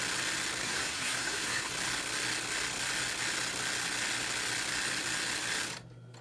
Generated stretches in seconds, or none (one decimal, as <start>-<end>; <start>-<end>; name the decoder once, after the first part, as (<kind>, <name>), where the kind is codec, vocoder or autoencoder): 0.6-1.7 (codec, SNAC)

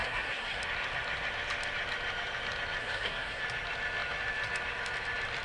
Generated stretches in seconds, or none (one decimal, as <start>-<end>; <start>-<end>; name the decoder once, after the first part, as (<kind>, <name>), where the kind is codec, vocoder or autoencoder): 0.0-0.6 (codec, SNAC); 2.8-3.4

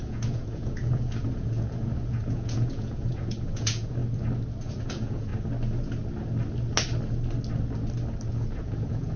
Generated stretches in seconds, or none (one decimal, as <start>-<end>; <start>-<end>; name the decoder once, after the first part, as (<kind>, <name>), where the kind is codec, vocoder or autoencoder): 0.0-4.0 (vocoder, Vocos); 4.7-5.3; 8.3-9.2